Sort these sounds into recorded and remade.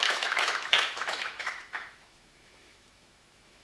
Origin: remade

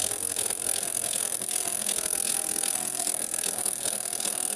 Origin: remade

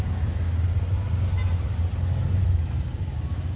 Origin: recorded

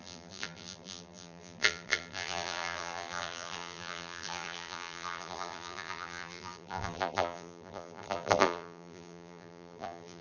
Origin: remade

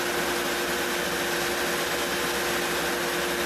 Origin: recorded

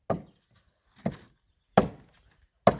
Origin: recorded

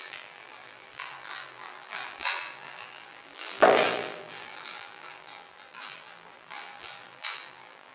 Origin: remade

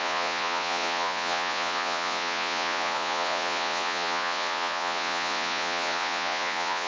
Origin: remade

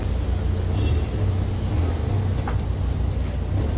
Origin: recorded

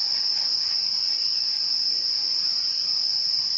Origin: remade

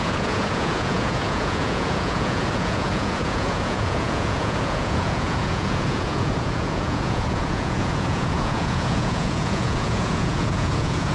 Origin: remade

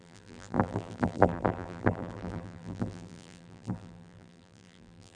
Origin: remade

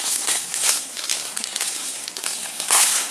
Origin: remade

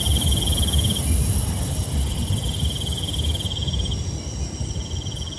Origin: recorded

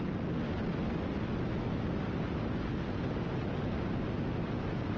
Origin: recorded